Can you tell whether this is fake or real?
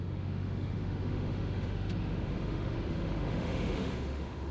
fake